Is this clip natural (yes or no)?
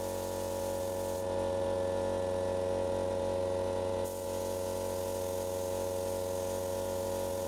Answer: yes